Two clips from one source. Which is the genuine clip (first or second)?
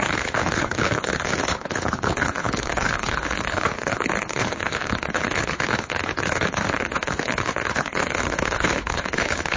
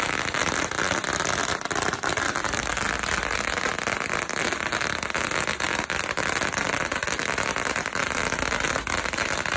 second